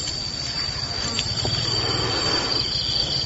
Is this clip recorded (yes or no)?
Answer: yes